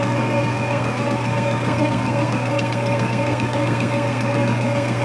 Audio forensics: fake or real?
fake